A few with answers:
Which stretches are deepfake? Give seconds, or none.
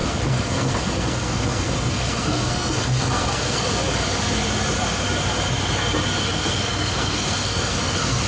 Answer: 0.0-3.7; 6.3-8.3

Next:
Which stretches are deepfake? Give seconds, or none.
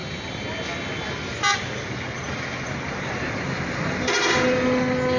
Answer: none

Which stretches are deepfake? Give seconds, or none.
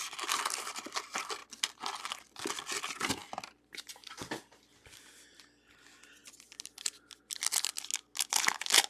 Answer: none